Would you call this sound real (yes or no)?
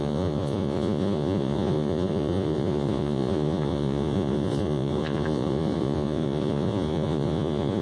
no